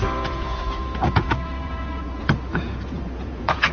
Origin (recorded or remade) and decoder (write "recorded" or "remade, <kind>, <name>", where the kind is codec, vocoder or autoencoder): remade, vocoder, Vocos